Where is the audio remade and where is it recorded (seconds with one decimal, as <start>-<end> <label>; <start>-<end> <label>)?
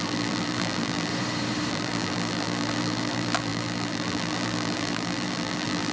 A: 0.0-1.1 remade; 1.1-1.7 recorded; 1.7-5.9 remade